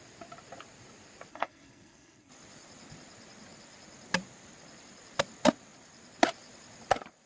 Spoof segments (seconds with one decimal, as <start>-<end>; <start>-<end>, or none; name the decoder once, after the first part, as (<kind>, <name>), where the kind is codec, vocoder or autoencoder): 1.3-2.3 (codec, SNAC)